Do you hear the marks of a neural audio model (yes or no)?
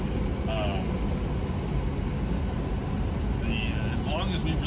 no